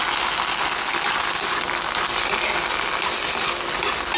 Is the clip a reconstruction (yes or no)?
no